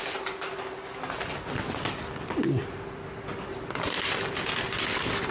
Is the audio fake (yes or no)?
no